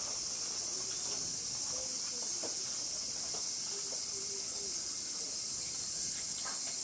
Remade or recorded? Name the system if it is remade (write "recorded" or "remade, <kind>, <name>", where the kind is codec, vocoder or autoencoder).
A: recorded